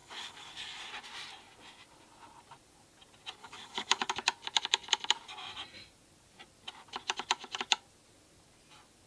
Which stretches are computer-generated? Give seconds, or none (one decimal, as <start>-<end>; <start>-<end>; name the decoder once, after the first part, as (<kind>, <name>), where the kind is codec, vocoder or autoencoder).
0.0-0.8 (codec, DAC); 3.4-4.1